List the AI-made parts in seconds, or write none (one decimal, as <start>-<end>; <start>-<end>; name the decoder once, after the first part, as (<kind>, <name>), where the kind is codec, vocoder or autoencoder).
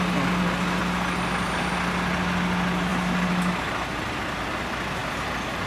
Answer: none